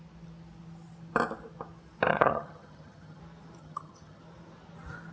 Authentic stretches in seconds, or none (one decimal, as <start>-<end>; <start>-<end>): 0.0-2.1; 3.2-3.6; 4.2-5.1